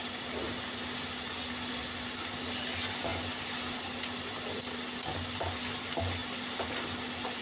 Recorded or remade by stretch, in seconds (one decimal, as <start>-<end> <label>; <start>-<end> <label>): 0.0-7.4 recorded

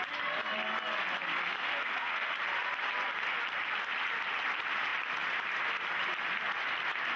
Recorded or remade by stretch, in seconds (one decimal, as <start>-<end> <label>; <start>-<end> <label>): 0.0-1.7 recorded; 1.7-2.3 remade; 2.3-7.2 recorded

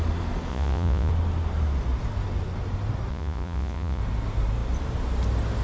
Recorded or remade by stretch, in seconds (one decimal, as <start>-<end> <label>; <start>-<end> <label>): 0.0-0.5 recorded; 0.5-1.1 remade; 1.1-3.1 recorded; 3.1-4.0 remade; 4.0-5.6 recorded

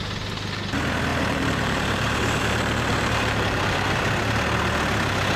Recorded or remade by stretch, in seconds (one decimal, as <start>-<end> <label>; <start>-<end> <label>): 0.0-1.1 recorded; 1.1-4.1 remade; 4.1-5.4 recorded